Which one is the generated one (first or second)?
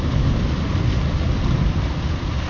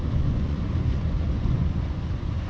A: second